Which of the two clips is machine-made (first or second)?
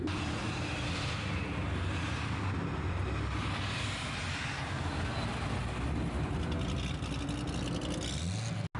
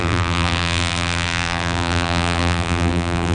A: second